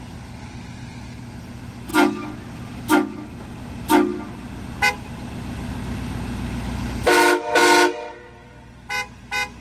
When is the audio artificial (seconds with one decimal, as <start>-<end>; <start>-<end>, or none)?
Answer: none

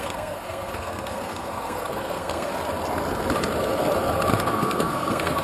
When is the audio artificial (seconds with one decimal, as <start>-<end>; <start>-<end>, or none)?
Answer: 0.0-2.5; 4.4-5.4

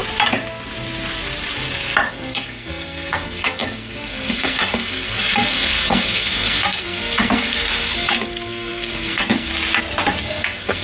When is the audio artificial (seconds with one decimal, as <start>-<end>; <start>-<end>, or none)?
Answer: 2.1-9.5; 10.2-10.8

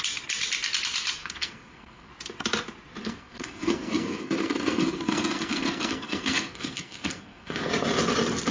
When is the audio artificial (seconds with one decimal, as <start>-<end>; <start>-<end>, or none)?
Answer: 1.2-2.1; 3.0-7.7

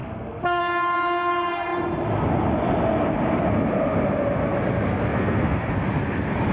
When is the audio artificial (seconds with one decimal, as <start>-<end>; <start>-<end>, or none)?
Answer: 0.0-0.6; 4.9-5.7

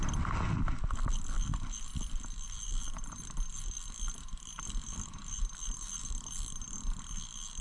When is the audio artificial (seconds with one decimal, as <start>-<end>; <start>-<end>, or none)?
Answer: none